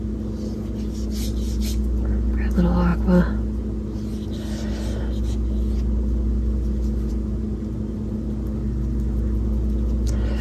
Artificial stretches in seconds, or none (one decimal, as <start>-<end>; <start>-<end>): none